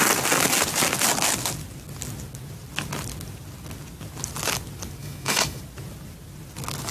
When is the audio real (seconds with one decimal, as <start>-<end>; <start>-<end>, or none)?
0.0-5.0; 5.6-6.9